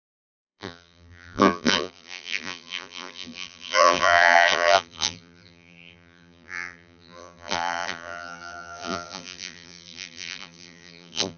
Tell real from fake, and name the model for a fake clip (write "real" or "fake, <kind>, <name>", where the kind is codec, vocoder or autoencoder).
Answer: fake, vocoder, BigVGAN v2